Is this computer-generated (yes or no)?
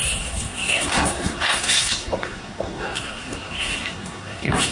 yes